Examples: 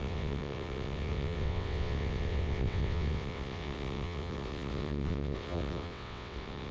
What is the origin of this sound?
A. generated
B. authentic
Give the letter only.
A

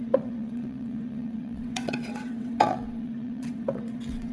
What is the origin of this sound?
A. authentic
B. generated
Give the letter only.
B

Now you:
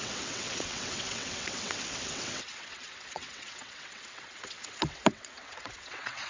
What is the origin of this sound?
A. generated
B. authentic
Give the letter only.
A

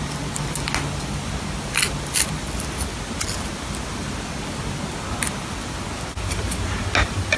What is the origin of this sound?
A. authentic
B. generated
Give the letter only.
A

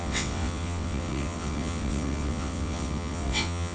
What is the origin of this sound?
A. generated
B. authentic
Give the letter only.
A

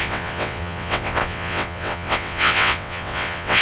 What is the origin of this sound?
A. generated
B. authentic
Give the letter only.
A